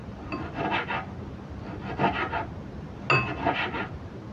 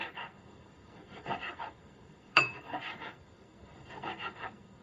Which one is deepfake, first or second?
second